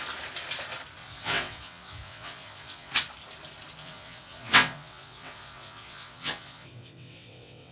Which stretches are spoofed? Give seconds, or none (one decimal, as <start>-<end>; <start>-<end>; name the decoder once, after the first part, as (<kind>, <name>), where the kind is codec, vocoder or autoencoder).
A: 1.0-2.9 (vocoder, WaveNeXt); 3.8-7.7